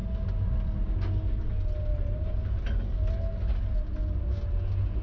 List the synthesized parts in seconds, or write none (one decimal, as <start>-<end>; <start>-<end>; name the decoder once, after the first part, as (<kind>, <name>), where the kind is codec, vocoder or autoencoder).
1.9-2.5 (vocoder, BigVGAN v2)